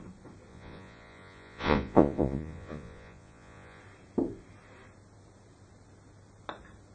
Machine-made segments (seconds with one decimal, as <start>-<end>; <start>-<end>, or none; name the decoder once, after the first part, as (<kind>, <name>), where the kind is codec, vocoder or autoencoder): 0.5-3.8 (vocoder, Vocos)